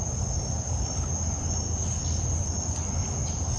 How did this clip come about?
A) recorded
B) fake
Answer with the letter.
A